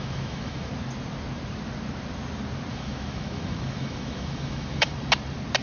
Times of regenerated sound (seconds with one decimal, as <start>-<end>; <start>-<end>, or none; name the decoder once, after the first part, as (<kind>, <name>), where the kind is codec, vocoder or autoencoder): 0.0-0.7 (autoencoder, DAC-VAE); 2.7-4.9